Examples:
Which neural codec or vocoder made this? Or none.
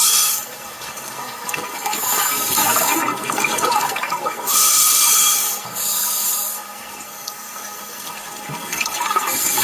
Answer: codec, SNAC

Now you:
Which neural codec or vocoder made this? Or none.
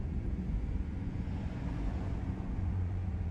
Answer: vocoder, Vocos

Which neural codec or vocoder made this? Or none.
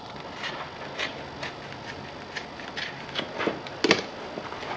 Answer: none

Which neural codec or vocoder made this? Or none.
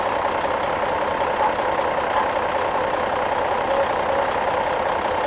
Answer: none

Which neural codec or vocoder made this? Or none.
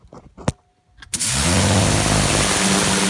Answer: none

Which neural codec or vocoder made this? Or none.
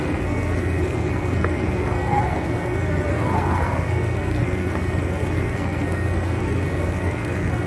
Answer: codec, SNAC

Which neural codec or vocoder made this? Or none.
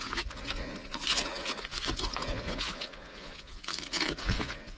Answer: vocoder, Vocos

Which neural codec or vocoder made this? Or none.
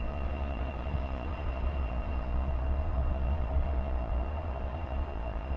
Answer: vocoder, Vocos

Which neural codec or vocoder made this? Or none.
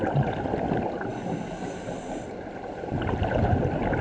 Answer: none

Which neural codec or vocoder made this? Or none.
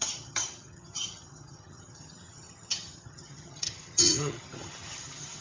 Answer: vocoder, HiFi-GAN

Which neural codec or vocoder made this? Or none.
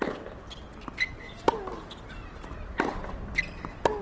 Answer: none